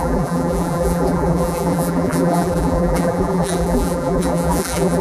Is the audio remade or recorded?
remade